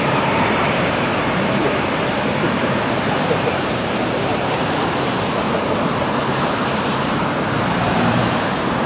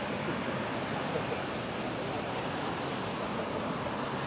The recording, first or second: second